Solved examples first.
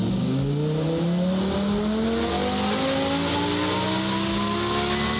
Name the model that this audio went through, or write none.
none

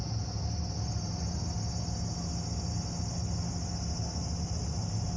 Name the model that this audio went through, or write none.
none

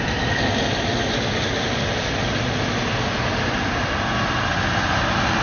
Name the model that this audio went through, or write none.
none